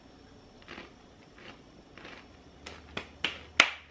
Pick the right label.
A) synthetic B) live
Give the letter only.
B